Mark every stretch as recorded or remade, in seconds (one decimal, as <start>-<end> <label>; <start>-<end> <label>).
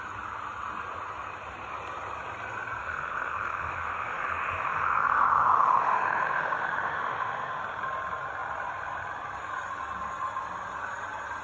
0.0-2.8 recorded; 2.8-7.6 remade; 7.6-11.4 recorded